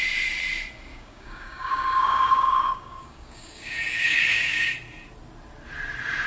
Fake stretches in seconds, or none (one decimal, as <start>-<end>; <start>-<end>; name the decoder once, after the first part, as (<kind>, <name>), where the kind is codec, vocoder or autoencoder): 0.9-4.7 (codec, DAC)

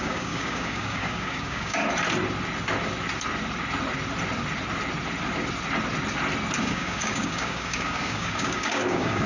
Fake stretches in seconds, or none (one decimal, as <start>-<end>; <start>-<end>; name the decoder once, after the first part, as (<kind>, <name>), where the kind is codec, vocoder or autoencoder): 0.0-1.8 (codec, DAC); 6.6-9.3

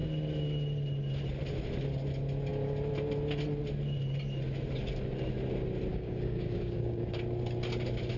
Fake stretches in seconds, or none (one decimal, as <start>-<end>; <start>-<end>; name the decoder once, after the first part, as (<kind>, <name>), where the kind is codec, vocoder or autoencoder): 5.9-7.2 (codec, DAC)

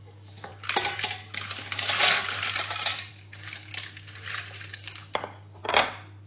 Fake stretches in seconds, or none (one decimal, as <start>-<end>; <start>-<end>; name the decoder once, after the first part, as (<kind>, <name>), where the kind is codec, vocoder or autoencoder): 0.0-0.5 (codec, DAC); 3.1-3.7; 4.7-5.6

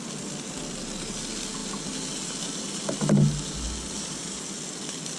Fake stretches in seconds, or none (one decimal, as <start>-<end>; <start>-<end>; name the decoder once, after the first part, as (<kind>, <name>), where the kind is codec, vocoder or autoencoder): none

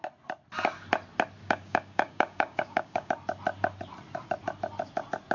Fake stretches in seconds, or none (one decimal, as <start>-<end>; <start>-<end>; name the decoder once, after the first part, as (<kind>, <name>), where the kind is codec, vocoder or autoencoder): 1.4-3.1 (codec, DAC)

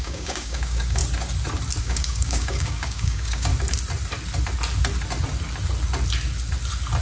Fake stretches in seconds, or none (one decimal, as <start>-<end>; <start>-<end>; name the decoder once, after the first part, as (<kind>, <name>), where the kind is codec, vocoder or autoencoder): 0.0-1.0 (codec, DAC); 1.8-3.5

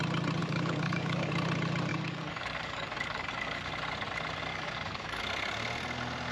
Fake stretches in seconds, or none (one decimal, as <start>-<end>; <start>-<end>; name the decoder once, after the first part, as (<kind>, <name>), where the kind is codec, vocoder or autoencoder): 0.4-1.3 (codec, DAC); 1.9-3.7; 4.5-5.2